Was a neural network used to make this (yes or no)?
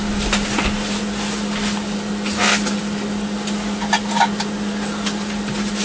no